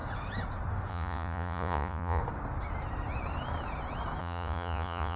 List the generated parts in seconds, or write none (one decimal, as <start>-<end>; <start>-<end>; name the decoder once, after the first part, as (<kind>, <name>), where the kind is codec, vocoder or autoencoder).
0.9-2.2 (vocoder, Vocos); 4.2-5.2